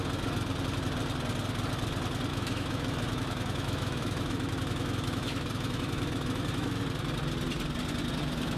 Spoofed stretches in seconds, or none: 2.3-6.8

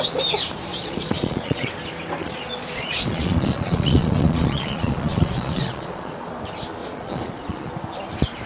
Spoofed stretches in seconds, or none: 0.7-1.7; 2.2-6.3; 6.8-7.7